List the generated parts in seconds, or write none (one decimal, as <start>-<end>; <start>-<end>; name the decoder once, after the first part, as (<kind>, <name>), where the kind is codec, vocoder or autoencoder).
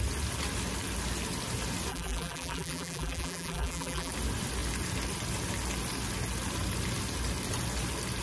1.9-4.1 (vocoder, BigVGAN v2)